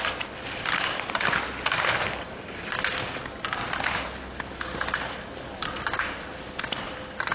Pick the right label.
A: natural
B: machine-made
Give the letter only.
A